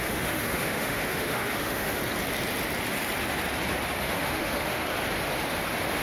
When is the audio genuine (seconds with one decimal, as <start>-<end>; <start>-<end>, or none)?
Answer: 2.0-4.0; 4.8-6.0